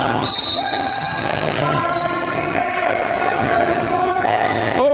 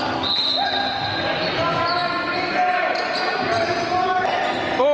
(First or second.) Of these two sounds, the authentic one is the second